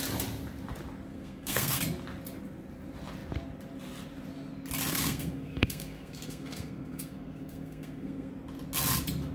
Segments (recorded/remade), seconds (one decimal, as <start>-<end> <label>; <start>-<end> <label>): 0.0-1.1 recorded; 1.1-1.8 remade; 1.8-4.9 recorded; 4.9-8.3 remade; 8.3-9.3 recorded